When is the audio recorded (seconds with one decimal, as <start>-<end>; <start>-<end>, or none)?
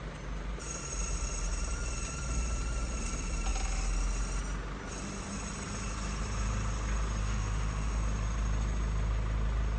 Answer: 0.0-7.2; 8.0-9.8